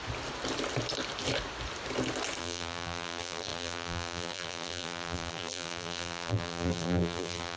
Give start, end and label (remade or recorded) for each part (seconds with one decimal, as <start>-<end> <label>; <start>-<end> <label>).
0.0-2.4 recorded; 2.4-7.6 remade